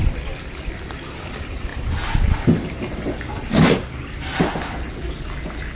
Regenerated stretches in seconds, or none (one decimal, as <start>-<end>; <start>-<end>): none